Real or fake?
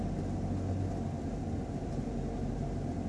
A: real